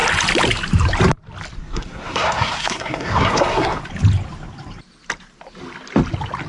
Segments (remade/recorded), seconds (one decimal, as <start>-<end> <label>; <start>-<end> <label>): 0.0-1.6 recorded; 1.6-3.8 remade; 3.8-6.5 recorded